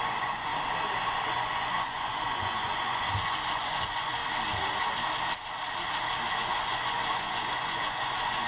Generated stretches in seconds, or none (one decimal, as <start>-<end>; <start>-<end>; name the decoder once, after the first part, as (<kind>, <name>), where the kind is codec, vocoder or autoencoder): 0.0-0.5 (vocoder, Vocos); 1.1-4.2; 6.4-8.5